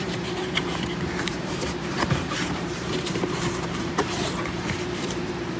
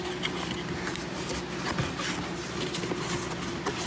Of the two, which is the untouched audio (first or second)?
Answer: second